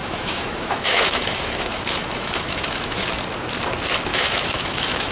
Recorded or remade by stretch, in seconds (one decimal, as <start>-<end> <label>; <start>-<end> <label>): 0.0-3.1 remade; 3.1-4.1 recorded; 4.1-5.1 remade